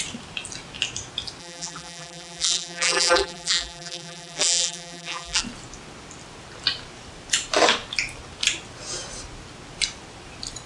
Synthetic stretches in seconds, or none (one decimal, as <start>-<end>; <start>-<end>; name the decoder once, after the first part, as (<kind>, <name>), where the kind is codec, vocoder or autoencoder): 1.4-5.4 (vocoder, BigVGAN v2)